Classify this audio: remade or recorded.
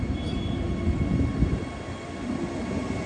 recorded